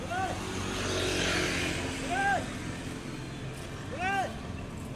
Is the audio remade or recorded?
recorded